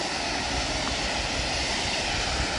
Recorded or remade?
recorded